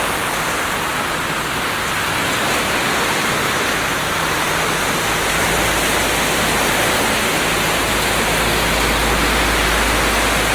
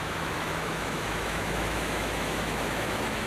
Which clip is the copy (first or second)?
second